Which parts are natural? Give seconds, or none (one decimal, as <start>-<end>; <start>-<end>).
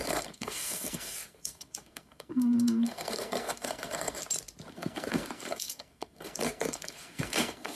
4.2-4.7